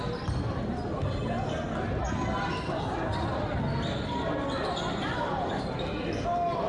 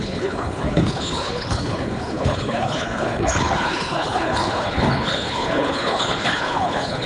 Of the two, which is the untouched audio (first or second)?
first